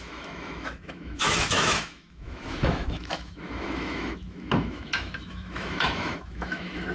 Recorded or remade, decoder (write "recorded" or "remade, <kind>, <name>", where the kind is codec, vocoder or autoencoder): remade, autoencoder, DAC-VAE